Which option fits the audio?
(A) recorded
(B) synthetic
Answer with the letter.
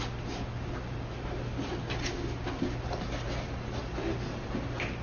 A